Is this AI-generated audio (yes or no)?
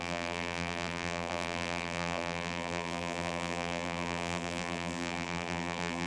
yes